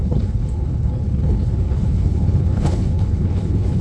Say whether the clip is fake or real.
fake